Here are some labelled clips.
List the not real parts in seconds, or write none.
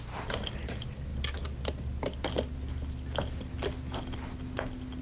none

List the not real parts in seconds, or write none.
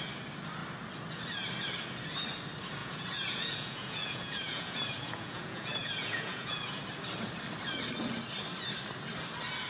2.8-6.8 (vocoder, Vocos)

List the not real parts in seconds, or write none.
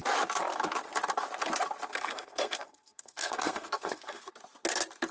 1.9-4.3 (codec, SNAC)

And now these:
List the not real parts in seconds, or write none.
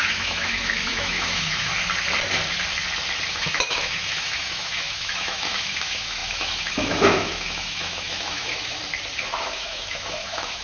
0.0-1.7 (autoencoder, DAC-VAE); 3.3-8.8; 9.3-10.6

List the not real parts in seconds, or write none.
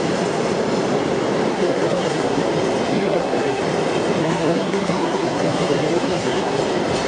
1.5-2.4 (codec, SNAC); 2.9-3.6; 4.2-6.6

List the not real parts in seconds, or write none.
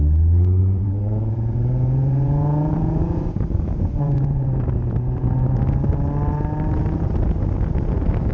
0.6-5.6 (vocoder, Vocos)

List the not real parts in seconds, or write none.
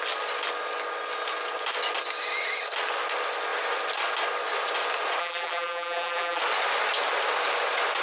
5.2-6.4 (vocoder, BigVGAN v2)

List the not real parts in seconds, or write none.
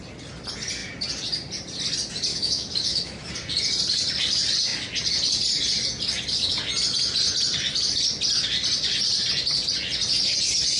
2.3-3.3 (autoencoder, DAC-VAE)